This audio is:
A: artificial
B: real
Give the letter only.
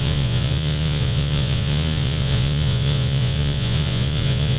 A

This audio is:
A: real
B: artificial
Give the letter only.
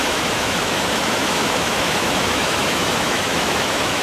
B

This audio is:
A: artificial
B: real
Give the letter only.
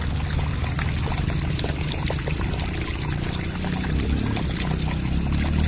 B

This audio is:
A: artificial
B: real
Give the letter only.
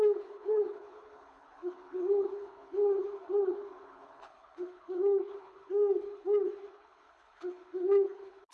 A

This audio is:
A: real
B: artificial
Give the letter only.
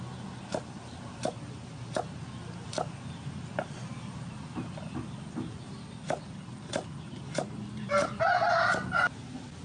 A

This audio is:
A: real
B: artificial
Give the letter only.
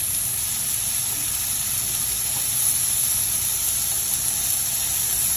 A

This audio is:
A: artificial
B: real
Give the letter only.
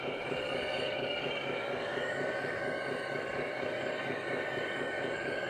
A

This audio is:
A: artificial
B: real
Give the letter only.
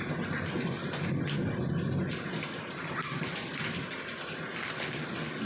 B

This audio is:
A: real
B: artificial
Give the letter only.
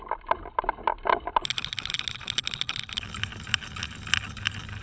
A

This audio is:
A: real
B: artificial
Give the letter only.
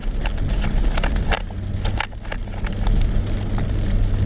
A